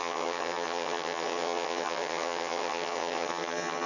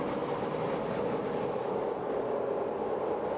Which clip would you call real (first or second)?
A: second